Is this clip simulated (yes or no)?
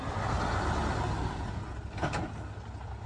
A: no